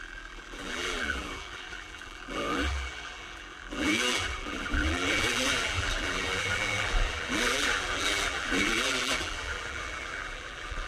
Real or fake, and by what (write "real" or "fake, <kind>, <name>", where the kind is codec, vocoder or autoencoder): fake, vocoder, BigVGAN v2